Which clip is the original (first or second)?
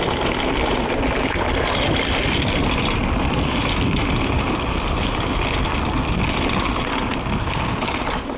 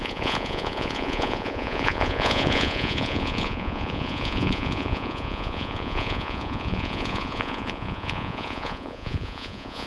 first